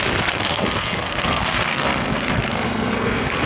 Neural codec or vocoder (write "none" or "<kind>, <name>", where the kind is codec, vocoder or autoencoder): codec, SNAC